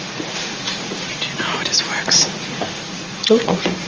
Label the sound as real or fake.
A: fake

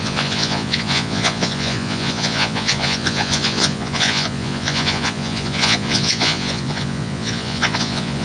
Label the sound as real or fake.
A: fake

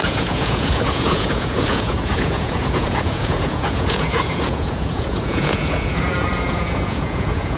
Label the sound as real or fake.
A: fake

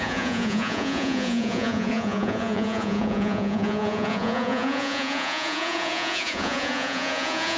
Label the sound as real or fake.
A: fake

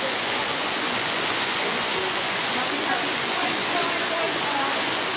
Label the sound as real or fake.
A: fake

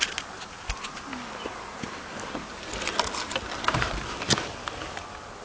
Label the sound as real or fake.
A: real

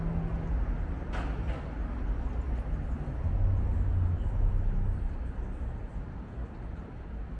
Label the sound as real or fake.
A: real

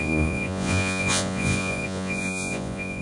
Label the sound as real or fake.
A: fake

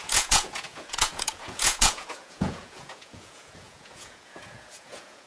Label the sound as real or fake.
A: fake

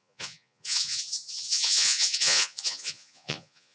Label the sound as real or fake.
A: fake